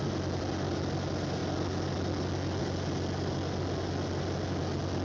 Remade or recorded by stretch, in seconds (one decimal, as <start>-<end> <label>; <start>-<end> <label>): 0.0-5.0 recorded